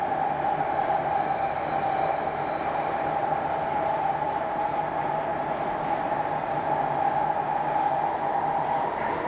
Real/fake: real